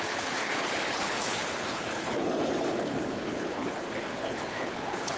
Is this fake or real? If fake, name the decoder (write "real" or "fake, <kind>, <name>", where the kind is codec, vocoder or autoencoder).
fake, codec, HILCodec